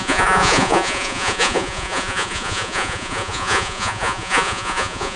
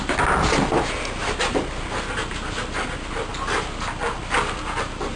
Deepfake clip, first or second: first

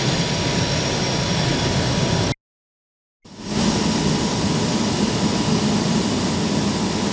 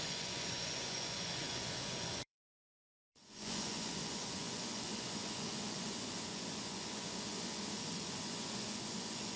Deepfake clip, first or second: second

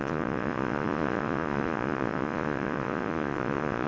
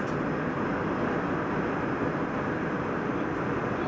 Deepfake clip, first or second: first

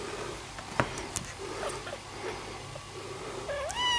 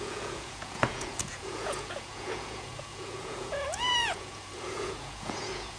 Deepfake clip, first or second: second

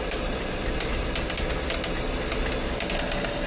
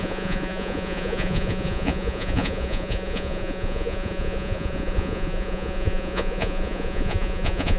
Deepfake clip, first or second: second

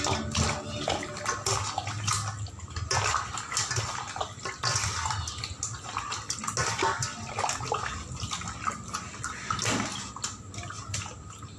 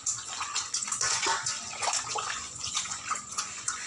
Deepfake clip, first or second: second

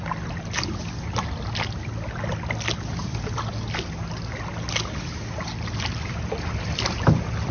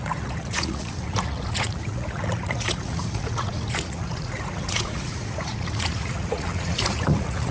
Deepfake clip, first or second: second